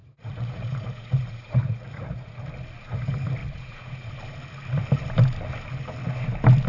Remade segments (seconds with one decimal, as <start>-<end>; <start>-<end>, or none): 0.0-2.4; 3.4-4.1